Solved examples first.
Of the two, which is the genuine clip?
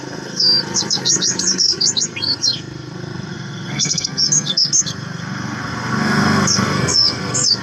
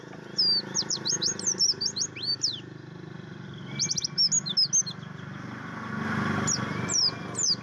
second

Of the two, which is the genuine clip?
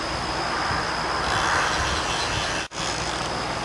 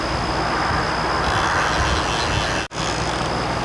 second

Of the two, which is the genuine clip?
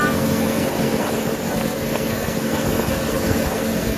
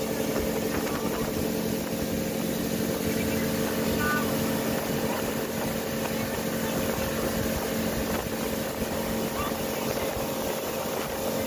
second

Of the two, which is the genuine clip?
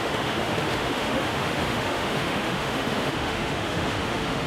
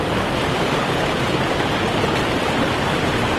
second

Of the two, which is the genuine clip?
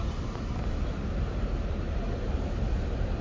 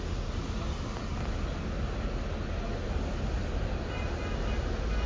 second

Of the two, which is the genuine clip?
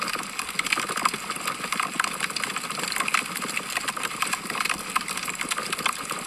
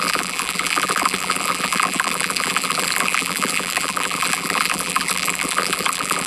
first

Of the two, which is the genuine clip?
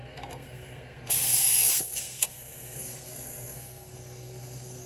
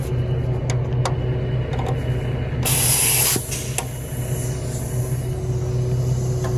second